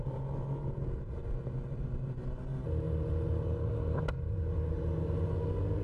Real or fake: real